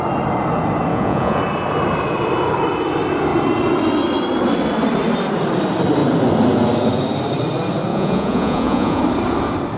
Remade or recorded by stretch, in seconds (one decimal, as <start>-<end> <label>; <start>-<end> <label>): 0.0-0.9 recorded; 0.9-1.4 remade; 1.4-7.9 recorded; 7.9-9.0 remade; 9.0-9.8 recorded